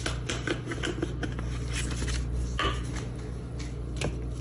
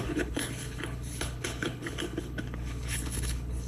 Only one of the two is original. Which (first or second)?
first